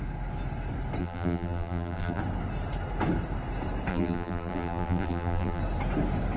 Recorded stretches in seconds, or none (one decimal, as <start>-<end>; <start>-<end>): 0.0-1.0; 2.2-3.9; 5.6-6.4